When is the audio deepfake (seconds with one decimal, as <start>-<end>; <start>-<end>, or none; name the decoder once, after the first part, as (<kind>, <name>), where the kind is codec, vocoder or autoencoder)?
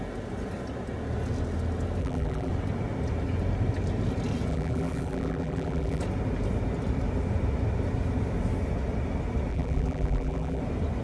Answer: 2.0-2.5 (vocoder, BigVGAN v2); 4.5-6.0; 9.5-10.6